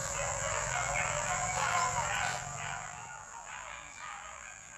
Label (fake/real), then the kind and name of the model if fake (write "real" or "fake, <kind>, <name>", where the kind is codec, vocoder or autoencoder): fake, vocoder, BigVGAN v2